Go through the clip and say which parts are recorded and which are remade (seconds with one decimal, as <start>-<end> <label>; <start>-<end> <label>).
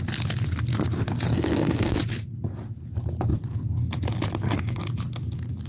0.0-1.3 recorded; 1.3-1.9 remade; 1.9-5.7 recorded